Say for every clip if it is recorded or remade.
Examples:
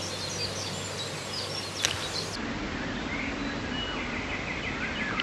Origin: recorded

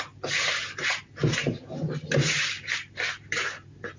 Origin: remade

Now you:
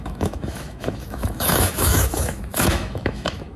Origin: remade